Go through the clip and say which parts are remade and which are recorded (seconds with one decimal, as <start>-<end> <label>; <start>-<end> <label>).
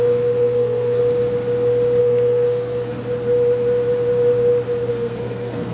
0.0-1.0 remade; 1.0-2.0 recorded; 2.0-3.0 remade; 3.0-4.9 recorded; 4.9-5.7 remade